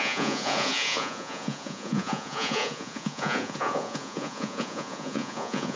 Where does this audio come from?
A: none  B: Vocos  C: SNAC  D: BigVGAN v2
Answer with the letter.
B